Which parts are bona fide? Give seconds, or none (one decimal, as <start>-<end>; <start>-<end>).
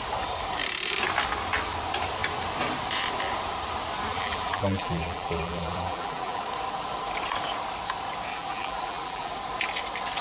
0.0-4.1; 6.4-8.3; 9.3-10.2